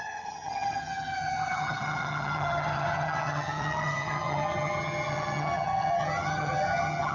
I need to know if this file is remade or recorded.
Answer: remade